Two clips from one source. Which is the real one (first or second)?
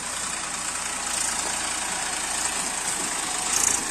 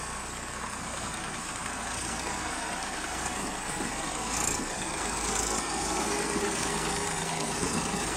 first